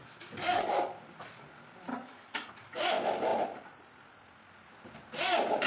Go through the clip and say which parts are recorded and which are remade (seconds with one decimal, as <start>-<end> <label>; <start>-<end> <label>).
0.0-0.7 remade; 0.7-1.9 recorded; 1.9-2.5 remade; 2.5-5.7 recorded